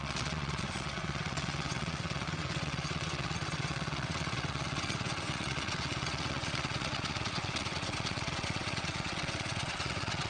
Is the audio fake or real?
fake